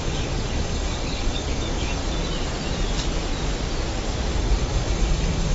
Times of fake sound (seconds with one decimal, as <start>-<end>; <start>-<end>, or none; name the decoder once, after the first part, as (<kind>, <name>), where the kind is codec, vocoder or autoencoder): 0.0-2.0 (codec, DAC); 4.4-5.5